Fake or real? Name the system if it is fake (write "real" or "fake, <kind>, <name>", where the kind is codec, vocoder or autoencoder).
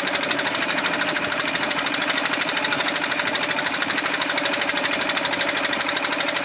fake, vocoder, BigVGAN v2